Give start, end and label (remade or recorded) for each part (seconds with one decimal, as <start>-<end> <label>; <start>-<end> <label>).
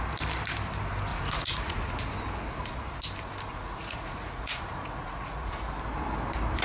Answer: 0.0-1.1 recorded; 1.1-2.0 remade; 2.0-3.5 recorded; 3.5-5.6 remade; 5.6-6.6 recorded